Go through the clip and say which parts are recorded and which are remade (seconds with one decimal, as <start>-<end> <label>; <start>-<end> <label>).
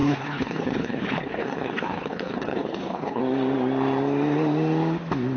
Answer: 0.0-3.2 remade; 3.2-5.4 recorded